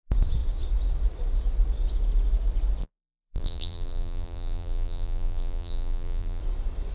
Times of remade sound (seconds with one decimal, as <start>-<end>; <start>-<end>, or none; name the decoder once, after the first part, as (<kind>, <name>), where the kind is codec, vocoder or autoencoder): 2.8-6.4 (vocoder, BigVGAN v2)